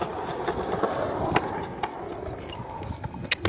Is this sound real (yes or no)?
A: yes